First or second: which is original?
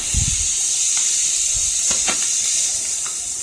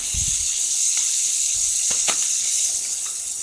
first